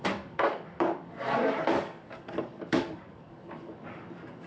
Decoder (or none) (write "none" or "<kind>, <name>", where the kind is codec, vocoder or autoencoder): codec, DAC